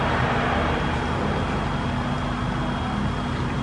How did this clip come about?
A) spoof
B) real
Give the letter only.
B